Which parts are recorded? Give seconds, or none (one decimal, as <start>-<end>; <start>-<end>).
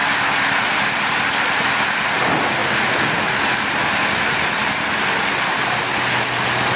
0.0-6.8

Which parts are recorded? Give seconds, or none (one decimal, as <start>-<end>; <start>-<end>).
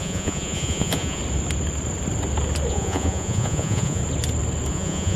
1.2-2.7; 4.0-4.7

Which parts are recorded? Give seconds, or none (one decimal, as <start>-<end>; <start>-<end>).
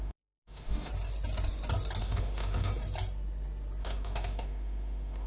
0.9-2.0; 2.7-3.8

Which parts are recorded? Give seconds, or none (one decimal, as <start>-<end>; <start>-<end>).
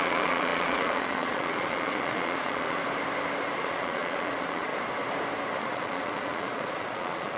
2.8-3.6; 4.7-5.6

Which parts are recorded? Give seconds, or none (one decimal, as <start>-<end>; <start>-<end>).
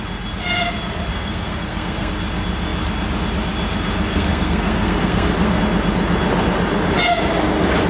0.0-1.1; 2.1-4.1; 5.6-7.9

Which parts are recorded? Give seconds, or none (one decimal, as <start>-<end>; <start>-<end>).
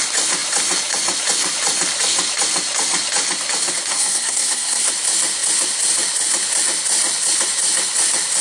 0.0-3.9; 4.9-8.4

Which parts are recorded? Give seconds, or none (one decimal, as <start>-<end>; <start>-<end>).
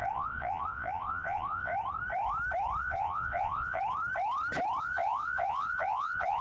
1.7-2.8; 3.8-4.8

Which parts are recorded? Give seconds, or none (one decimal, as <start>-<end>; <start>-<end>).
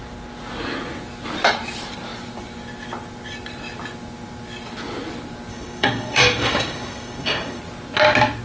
0.0-5.5; 7.6-8.4